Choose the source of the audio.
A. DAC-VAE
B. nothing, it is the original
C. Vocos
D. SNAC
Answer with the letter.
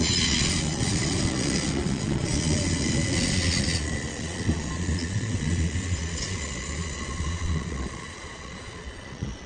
C